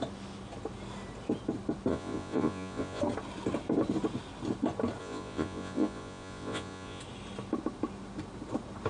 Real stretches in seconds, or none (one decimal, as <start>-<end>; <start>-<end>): 0.0-1.9; 3.0-5.0; 7.0-8.9